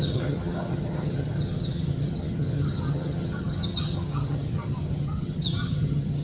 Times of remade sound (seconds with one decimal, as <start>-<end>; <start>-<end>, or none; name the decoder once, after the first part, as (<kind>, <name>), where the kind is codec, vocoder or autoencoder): 0.0-6.2 (vocoder, HiFi-GAN)